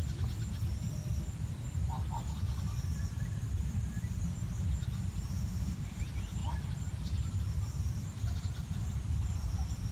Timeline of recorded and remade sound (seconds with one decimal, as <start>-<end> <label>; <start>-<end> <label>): 0.0-5.3 recorded; 5.3-6.0 remade; 6.0-9.9 recorded